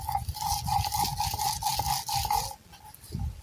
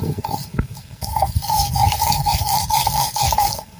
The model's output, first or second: second